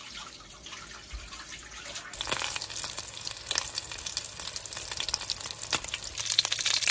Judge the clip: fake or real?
real